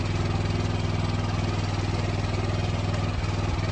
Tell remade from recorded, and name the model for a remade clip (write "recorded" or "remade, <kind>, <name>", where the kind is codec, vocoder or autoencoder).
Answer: recorded